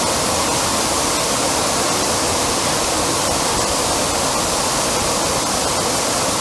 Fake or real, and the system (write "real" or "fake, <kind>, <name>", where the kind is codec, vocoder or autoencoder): real